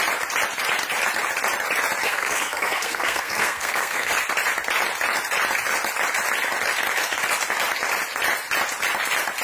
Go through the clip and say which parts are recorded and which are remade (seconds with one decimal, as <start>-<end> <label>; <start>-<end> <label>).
0.0-2.0 recorded; 2.0-4.1 remade; 4.1-9.4 recorded